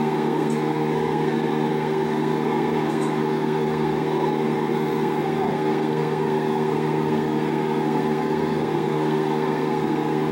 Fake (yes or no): yes